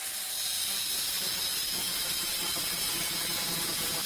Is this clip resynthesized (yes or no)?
yes